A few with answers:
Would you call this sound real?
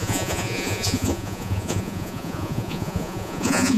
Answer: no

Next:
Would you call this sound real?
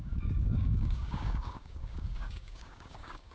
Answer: no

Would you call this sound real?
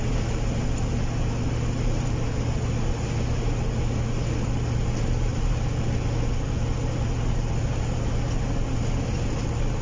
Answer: yes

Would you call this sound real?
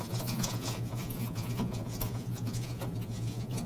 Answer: no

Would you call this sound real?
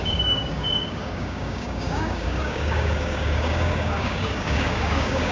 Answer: no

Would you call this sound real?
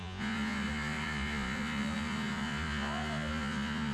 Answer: no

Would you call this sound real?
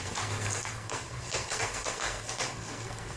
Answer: no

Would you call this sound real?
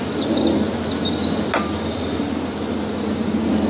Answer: yes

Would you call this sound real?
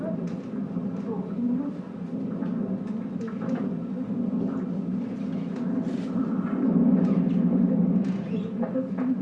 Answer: yes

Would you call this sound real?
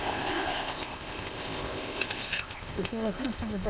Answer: no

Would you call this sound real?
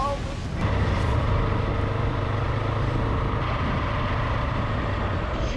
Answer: yes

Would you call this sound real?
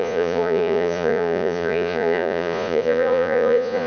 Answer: no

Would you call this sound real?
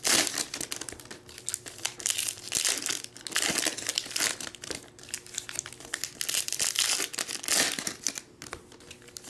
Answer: yes